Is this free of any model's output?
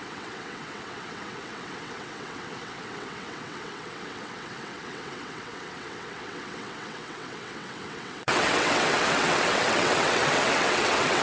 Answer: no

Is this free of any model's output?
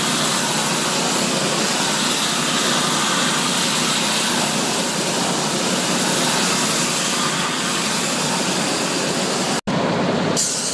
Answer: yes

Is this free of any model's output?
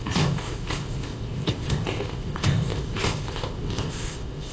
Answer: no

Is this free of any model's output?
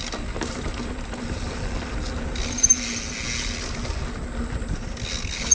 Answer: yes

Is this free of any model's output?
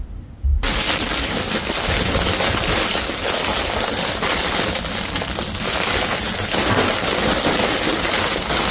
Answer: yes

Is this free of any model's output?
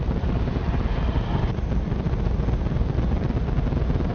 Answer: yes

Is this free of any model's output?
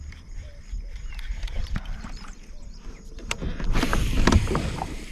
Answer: no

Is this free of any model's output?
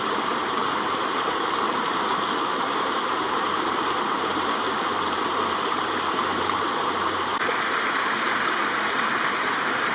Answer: no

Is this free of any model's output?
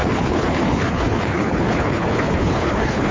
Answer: no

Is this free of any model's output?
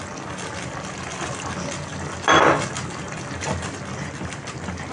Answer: yes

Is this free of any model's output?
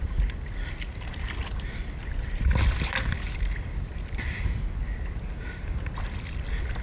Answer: yes